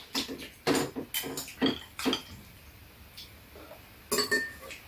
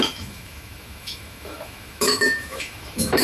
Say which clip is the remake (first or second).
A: second